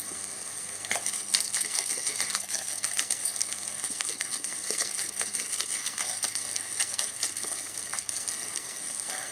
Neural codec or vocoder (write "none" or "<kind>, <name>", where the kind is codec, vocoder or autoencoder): codec, SNAC